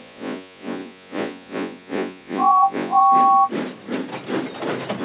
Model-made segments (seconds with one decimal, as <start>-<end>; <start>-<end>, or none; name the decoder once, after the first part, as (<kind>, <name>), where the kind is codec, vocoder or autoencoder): 0.0-3.0 (vocoder, Vocos)